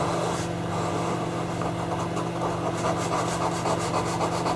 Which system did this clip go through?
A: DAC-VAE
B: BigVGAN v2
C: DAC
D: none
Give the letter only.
D